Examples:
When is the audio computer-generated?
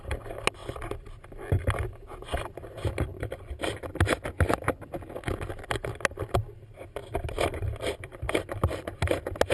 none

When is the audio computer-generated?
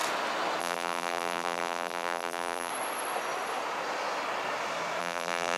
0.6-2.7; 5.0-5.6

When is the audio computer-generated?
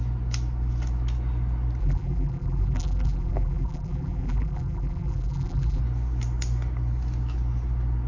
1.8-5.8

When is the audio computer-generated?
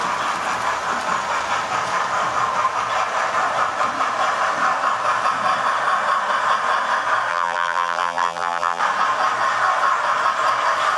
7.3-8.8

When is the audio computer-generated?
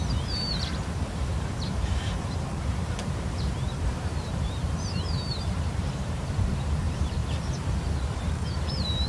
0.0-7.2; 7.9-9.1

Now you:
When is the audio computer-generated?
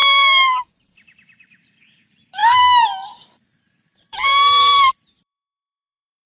0.0-6.3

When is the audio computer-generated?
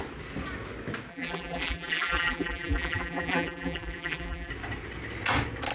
1.1-4.5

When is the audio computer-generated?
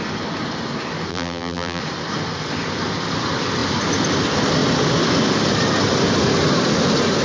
1.1-1.8